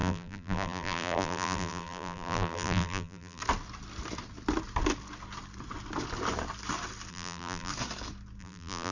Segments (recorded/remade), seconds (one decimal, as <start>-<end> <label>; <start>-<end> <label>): 0.0-3.4 remade; 3.4-7.1 recorded; 7.1-7.7 remade; 7.7-8.4 recorded; 8.4-8.9 remade